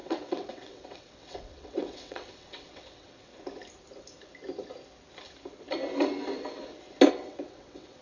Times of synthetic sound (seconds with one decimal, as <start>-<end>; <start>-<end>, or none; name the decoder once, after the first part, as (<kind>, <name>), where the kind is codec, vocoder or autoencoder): 0.0-3.3 (vocoder, WaveNeXt); 7.1-8.0